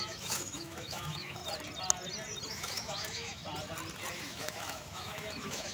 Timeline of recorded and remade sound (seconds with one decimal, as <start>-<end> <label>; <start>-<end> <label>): 0.0-1.4 remade; 1.4-2.5 recorded; 2.5-3.4 remade; 3.4-4.1 recorded; 4.1-5.7 remade